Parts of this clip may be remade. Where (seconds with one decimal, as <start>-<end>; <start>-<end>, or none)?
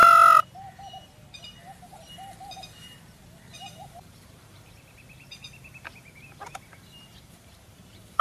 3.5-8.2